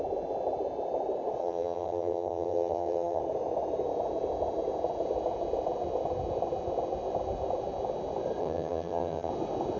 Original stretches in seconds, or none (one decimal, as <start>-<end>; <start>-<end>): 0.0-1.4; 3.2-8.4; 9.3-9.8